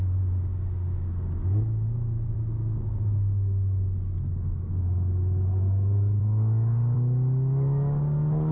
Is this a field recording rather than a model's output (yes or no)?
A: yes